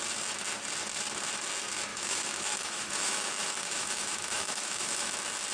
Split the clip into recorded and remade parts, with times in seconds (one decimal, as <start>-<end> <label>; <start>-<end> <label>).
0.0-1.9 recorded; 1.9-5.1 remade; 5.1-5.5 recorded